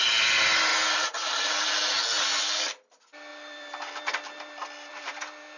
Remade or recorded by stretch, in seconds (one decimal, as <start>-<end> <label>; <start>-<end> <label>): 0.0-4.9 recorded; 4.9-5.6 remade

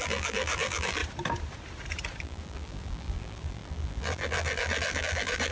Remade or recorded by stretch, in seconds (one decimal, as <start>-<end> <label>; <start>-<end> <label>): 0.0-1.0 remade; 1.0-2.2 recorded; 2.2-5.5 remade